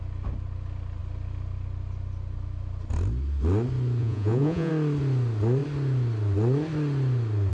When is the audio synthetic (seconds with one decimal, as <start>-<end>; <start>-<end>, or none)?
4.0-4.7